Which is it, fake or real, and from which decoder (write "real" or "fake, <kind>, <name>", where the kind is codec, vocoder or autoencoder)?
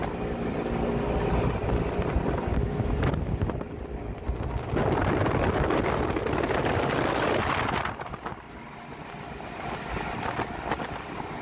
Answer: real